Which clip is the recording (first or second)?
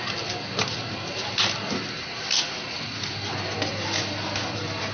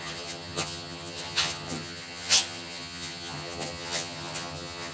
first